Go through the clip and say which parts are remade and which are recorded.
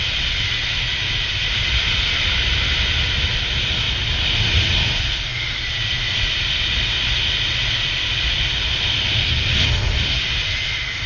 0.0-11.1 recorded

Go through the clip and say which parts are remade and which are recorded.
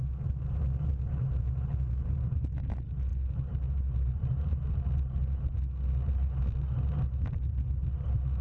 0.0-8.4 recorded